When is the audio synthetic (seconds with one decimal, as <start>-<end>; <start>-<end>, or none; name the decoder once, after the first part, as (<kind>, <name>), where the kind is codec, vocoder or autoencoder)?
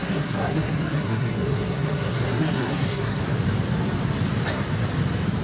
0.0-3.2 (codec, SNAC)